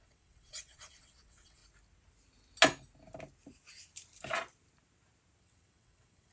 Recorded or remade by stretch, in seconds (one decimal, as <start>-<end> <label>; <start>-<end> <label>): 0.0-1.6 remade; 1.6-5.4 recorded; 5.4-6.3 remade